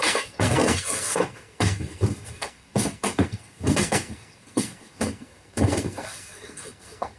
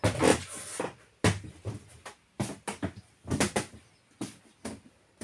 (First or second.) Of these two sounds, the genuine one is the second